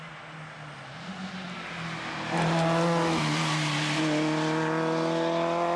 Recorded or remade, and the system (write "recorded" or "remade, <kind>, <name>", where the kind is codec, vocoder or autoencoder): recorded